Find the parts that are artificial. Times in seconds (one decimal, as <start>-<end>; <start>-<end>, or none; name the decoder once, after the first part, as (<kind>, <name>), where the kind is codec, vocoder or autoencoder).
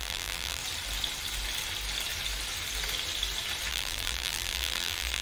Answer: 0.0-0.6 (vocoder, BigVGAN v2); 3.7-5.2